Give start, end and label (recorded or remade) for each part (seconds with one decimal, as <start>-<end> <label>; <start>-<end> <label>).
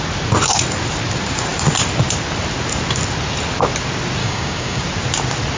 0.0-4.2 recorded; 4.2-4.8 remade; 4.8-5.6 recorded